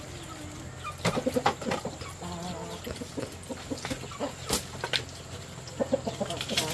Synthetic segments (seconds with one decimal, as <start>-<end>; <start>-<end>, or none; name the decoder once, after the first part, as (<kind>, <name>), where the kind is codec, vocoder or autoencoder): none

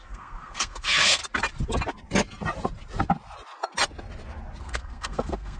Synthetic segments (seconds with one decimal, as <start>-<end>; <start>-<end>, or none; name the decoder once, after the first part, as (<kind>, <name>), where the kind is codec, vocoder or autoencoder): 0.0-1.2 (codec, SNAC); 4.6-5.6

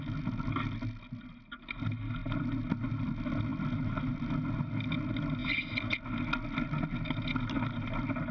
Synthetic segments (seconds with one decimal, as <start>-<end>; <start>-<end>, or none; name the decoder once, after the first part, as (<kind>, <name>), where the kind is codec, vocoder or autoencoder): none